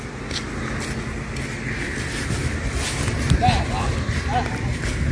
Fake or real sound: real